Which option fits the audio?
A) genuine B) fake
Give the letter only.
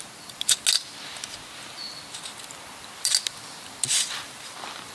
A